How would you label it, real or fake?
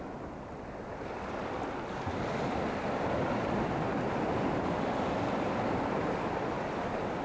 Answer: real